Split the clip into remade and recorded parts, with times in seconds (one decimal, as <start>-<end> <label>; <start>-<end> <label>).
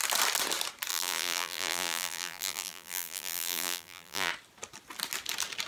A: 0.0-0.9 recorded; 0.9-4.3 remade; 4.3-5.7 recorded